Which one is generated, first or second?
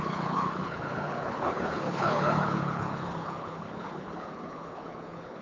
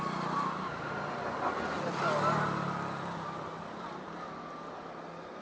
first